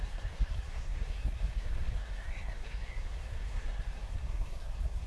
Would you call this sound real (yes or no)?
no